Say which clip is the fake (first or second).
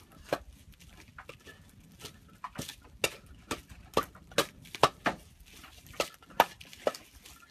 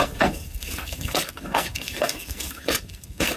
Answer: second